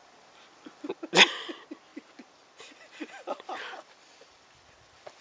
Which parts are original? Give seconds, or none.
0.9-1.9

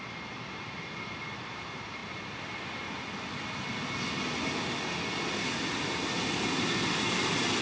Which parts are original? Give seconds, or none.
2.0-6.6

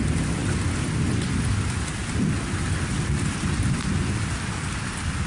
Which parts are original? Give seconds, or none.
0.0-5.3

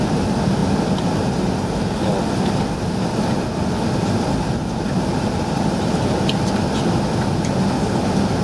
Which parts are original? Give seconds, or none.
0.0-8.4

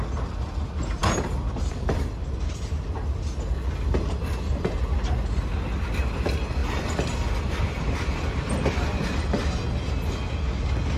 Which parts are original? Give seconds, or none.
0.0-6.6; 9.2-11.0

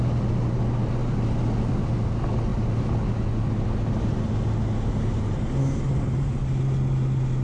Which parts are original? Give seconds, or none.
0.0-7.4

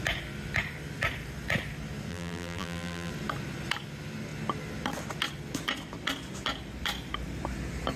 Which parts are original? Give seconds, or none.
0.0-2.1; 3.1-8.0